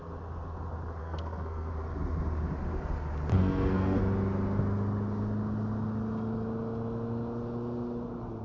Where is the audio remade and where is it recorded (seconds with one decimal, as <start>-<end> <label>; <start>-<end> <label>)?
0.0-1.0 recorded; 1.0-1.7 remade; 1.7-3.3 recorded; 3.3-4.0 remade; 4.0-8.4 recorded